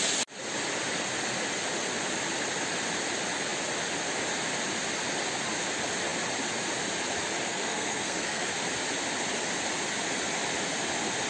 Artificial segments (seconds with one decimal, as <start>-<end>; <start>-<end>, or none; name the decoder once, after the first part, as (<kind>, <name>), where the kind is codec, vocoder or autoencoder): 7.5-8.5 (codec, SNAC)